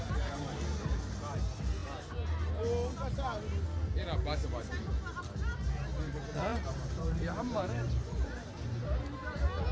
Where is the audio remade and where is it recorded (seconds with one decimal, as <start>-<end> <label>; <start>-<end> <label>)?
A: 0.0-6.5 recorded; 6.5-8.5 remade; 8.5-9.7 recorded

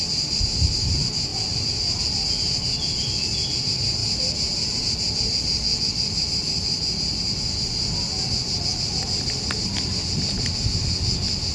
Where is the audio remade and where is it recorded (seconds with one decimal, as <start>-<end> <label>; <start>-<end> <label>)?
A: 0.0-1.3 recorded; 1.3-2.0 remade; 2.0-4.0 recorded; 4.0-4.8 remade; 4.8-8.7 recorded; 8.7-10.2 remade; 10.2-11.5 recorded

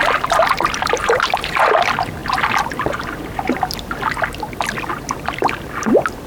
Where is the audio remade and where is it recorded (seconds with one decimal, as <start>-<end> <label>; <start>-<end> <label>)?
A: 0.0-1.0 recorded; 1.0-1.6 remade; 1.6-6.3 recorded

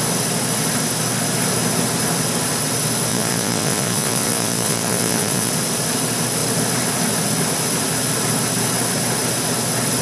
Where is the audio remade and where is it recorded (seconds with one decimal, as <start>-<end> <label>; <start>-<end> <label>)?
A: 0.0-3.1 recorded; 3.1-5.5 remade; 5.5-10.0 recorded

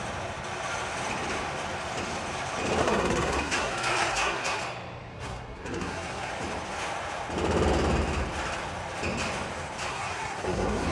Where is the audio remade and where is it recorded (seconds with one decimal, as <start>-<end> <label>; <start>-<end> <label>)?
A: 0.0-2.8 recorded; 2.8-4.6 remade; 4.6-5.1 recorded; 5.1-6.3 remade; 6.3-9.9 recorded; 9.9-10.9 remade

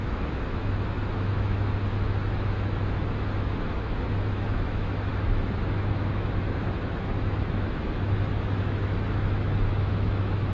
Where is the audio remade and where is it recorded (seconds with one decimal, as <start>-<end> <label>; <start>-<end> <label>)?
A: 0.0-10.5 remade

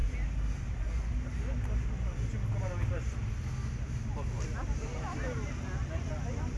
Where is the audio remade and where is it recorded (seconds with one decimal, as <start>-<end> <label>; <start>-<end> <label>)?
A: 0.0-6.6 recorded